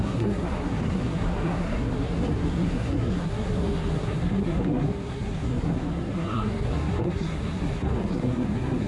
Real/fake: fake